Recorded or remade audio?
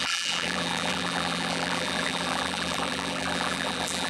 remade